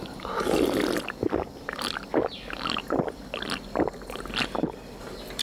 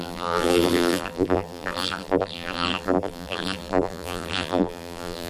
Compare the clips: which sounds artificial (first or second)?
second